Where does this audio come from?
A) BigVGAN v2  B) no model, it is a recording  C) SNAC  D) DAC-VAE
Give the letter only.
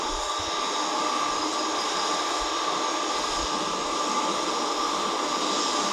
B